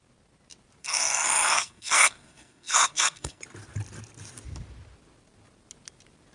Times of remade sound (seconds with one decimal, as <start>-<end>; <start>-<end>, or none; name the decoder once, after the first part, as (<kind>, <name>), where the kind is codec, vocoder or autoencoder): 0.8-3.4 (codec, SNAC)